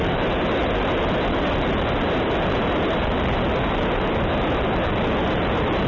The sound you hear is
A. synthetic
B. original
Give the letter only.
B